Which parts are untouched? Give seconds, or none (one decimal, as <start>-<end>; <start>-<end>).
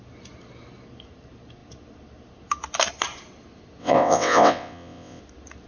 0.0-3.8; 5.2-5.7